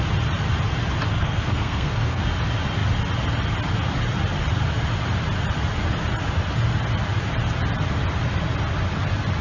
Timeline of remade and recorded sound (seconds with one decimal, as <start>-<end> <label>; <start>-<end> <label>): 0.0-1.1 recorded; 1.1-2.2 remade; 2.2-9.4 recorded